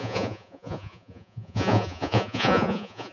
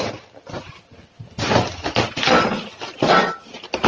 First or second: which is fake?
first